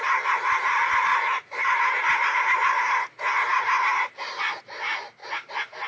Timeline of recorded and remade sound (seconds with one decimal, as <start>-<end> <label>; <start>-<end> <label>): 0.0-1.1 remade; 1.1-4.6 recorded; 4.6-5.9 remade